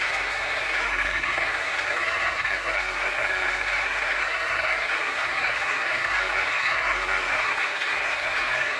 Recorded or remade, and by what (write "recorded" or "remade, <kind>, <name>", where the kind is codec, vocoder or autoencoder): remade, codec, SNAC